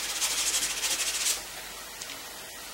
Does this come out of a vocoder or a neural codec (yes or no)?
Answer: no